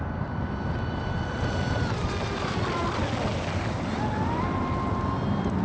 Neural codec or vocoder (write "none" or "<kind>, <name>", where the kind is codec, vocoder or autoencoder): none